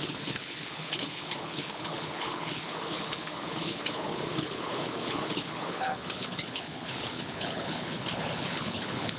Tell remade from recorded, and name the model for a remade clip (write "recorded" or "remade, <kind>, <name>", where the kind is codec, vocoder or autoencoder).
remade, codec, HILCodec